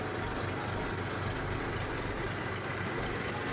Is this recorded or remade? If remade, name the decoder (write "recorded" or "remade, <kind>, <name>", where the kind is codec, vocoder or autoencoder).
recorded